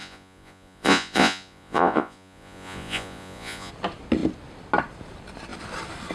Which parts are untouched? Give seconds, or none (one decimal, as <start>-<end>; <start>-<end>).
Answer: 3.7-6.1